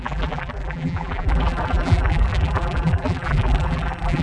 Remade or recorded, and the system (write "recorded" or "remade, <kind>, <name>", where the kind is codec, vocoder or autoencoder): remade, vocoder, BigVGAN v2